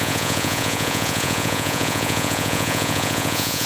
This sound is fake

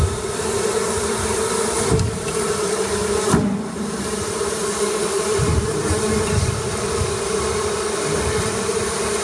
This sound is fake